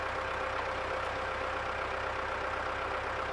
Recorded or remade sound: recorded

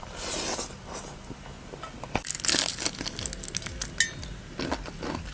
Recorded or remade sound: recorded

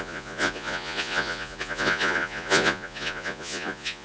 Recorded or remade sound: remade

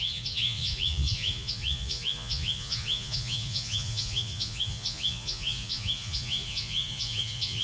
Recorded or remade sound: remade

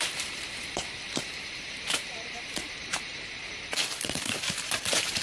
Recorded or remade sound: remade